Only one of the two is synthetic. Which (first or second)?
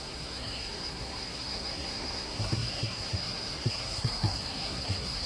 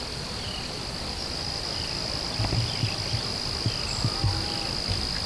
first